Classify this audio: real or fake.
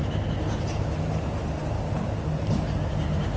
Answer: real